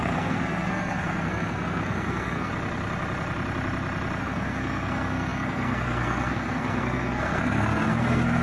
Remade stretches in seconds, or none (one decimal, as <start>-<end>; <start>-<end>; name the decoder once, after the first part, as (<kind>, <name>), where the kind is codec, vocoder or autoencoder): 0.0-2.5 (codec, SNAC); 4.2-8.4